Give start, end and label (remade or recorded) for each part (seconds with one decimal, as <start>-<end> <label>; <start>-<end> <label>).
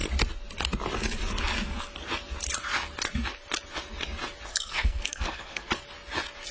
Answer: 0.0-4.5 recorded; 4.5-5.7 remade; 5.7-6.5 recorded